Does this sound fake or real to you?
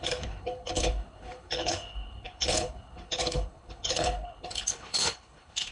fake